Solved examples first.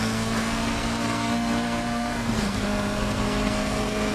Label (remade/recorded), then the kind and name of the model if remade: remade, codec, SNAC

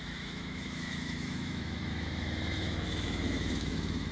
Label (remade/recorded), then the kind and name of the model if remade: remade, autoencoder, DAC-VAE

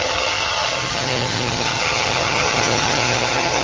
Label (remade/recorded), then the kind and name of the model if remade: remade, vocoder, HiFi-GAN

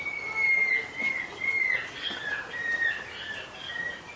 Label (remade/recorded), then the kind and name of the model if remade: recorded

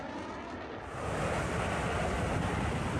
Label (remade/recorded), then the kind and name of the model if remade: recorded